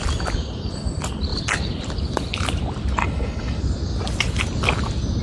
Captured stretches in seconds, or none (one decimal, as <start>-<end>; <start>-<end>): 0.0-3.0; 3.6-5.2